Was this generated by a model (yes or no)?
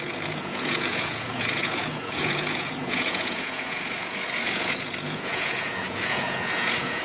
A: yes